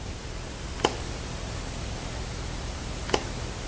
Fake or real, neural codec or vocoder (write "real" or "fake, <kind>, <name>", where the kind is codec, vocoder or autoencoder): fake, vocoder, BigVGAN v2